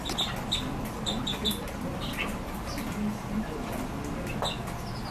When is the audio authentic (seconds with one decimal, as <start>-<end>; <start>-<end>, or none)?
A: 0.0-5.1